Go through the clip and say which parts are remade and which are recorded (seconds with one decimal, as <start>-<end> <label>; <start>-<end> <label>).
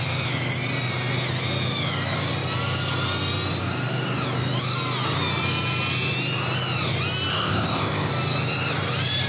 0.0-7.3 recorded; 7.3-8.1 remade; 8.1-9.3 recorded